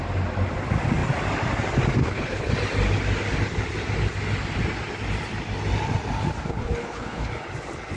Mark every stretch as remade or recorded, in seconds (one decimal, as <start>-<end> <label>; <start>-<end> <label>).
0.0-2.0 recorded; 2.0-2.5 remade; 2.5-6.5 recorded; 6.5-7.3 remade; 7.3-8.0 recorded